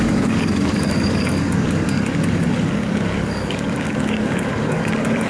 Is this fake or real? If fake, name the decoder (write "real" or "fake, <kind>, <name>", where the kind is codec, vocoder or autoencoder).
fake, codec, DAC